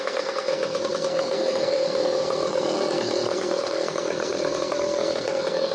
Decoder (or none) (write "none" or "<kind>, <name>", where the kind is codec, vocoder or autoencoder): codec, SNAC